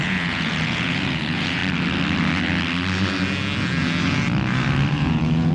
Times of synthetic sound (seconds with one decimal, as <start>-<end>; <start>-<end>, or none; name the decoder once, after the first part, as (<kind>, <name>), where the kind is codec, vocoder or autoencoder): 0.0-1.6 (vocoder, Vocos); 4.9-5.5